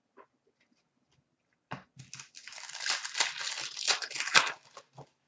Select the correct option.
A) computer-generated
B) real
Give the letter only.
B